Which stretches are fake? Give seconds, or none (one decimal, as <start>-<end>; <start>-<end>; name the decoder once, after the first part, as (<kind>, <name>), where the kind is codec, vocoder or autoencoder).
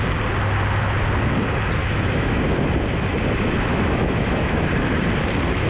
1.8-2.4 (autoencoder, DAC-VAE); 3.7-4.7